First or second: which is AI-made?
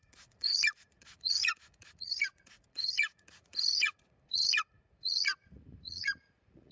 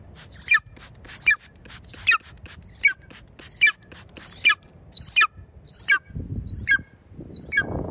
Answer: first